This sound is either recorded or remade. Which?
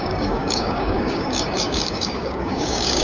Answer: remade